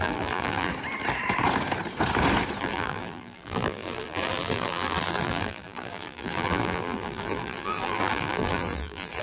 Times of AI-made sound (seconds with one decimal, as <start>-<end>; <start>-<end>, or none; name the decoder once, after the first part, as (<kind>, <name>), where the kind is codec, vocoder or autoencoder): 0.0-0.7 (vocoder, BigVGAN v2); 2.6-9.2